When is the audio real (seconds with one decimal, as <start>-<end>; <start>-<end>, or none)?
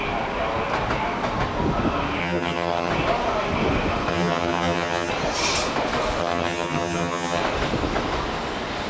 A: 0.0-2.2; 2.9-4.1; 5.1-6.2; 7.4-8.9